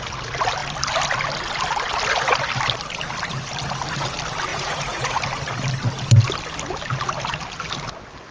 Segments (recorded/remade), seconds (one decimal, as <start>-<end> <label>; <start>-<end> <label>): 0.0-4.5 recorded; 4.5-5.2 remade; 5.2-8.3 recorded